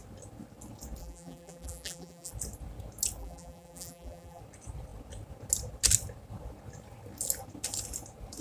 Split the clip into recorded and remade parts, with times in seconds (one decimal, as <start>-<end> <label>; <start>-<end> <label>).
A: 0.0-1.0 recorded; 1.0-2.3 remade; 2.3-3.2 recorded; 3.2-4.4 remade; 4.4-8.4 recorded